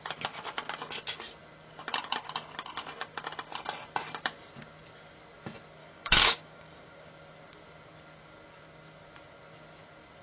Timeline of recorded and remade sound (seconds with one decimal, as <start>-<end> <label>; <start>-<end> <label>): 0.0-5.8 recorded; 5.8-7.1 remade; 7.1-10.2 recorded